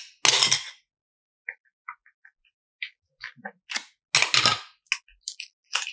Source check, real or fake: real